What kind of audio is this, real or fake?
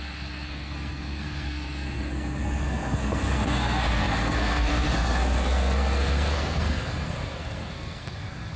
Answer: fake